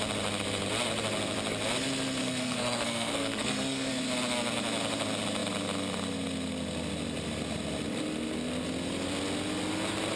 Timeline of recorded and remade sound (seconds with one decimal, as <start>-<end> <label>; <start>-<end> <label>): 0.0-2.2 recorded; 2.2-3.9 remade; 3.9-10.2 recorded